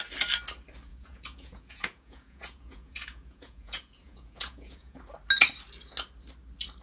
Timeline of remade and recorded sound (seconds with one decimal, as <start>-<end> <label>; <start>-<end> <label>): 0.0-0.9 recorded; 0.9-5.0 remade; 5.0-6.8 recorded